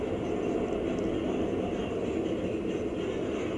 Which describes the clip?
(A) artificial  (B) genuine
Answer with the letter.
B